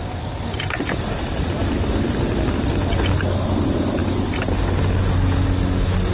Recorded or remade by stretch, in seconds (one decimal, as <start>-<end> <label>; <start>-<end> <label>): 0.0-6.1 recorded